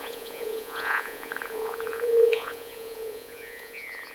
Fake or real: fake